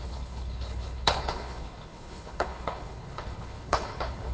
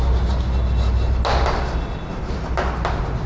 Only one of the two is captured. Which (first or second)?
second